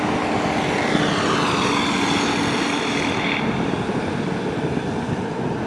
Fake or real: real